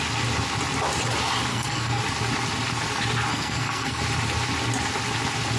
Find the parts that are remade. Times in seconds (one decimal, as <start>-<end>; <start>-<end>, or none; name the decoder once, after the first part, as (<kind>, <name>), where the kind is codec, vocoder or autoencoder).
1.5-2.0 (codec, SNAC); 3.3-4.0